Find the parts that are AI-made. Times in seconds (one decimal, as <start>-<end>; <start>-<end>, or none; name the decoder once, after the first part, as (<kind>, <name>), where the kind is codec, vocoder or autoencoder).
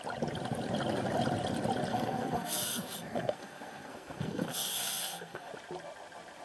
1.9-5.5 (codec, SNAC)